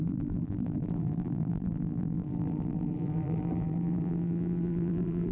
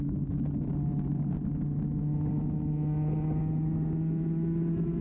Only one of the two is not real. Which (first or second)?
first